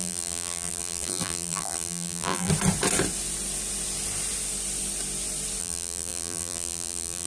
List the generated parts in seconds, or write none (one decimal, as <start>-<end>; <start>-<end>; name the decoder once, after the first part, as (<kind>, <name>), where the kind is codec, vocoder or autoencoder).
0.0-2.5 (vocoder, BigVGAN v2); 5.6-7.3